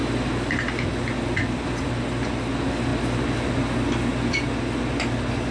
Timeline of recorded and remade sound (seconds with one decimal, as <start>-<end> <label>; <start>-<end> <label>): 0.0-5.5 recorded